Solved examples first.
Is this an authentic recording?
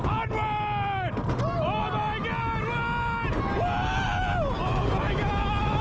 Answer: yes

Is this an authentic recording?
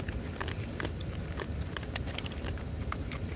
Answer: no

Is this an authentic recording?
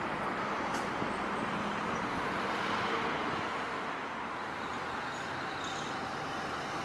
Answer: yes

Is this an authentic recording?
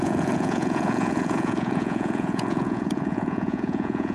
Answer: no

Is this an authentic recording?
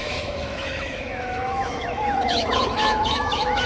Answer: no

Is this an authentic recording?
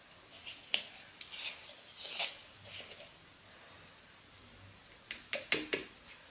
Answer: yes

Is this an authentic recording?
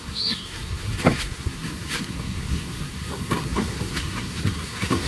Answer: no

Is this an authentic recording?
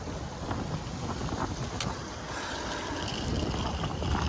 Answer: yes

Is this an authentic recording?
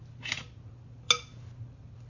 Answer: yes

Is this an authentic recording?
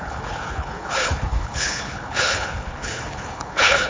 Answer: no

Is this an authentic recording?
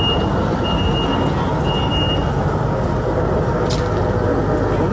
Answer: yes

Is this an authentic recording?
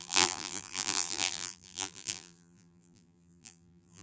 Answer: no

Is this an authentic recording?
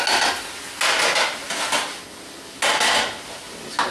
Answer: yes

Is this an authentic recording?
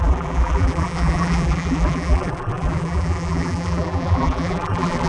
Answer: no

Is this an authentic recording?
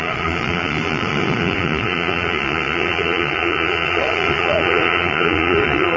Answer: no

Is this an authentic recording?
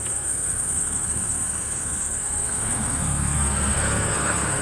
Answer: no